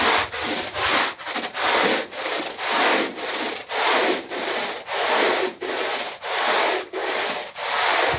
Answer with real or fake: real